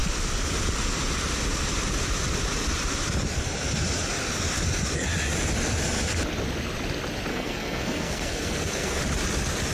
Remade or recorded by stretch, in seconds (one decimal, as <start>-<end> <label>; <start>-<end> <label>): 0.0-7.3 recorded; 7.3-9.0 remade; 9.0-9.7 recorded